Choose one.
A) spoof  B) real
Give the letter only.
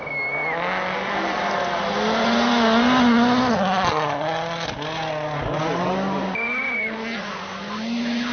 B